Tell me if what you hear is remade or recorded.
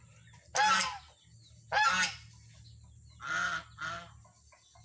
recorded